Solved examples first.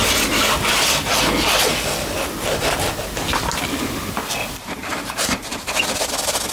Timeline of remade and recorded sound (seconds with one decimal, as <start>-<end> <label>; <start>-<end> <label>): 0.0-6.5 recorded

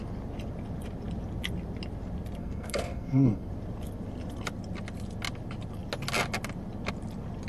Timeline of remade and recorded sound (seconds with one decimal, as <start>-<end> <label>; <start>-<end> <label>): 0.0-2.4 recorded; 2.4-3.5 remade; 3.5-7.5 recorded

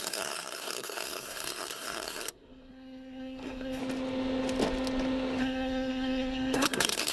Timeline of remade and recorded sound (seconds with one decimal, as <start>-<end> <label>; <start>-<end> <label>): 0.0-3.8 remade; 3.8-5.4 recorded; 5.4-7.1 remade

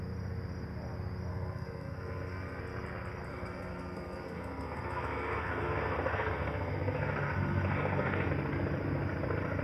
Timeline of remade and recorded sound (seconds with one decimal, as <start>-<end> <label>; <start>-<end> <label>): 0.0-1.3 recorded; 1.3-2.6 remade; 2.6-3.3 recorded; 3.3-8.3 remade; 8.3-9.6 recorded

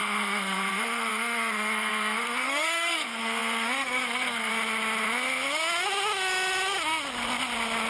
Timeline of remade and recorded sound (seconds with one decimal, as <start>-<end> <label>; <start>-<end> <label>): 0.0-4.5 remade; 4.5-7.9 recorded

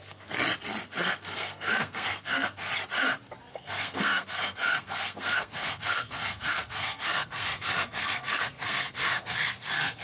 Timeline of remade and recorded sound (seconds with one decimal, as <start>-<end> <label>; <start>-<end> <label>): 0.0-0.4 remade; 0.4-1.0 recorded; 1.0-2.7 remade; 2.7-3.5 recorded; 3.5-10.0 remade

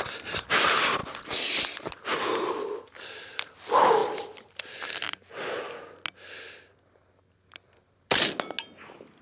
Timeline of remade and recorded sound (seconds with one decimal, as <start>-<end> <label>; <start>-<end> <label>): 0.0-9.2 recorded

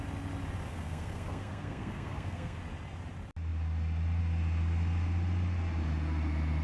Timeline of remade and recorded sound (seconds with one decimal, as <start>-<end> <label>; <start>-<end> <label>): 0.0-0.7 recorded; 0.7-2.6 remade; 2.6-6.6 recorded